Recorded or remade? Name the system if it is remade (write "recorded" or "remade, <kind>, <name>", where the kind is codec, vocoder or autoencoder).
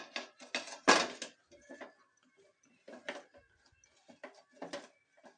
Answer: recorded